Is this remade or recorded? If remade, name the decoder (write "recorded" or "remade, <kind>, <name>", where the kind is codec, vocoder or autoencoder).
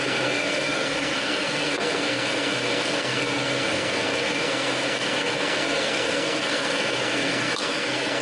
remade, codec, SNAC